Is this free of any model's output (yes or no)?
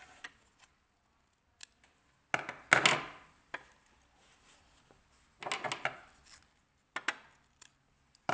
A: yes